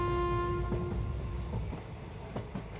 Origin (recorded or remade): recorded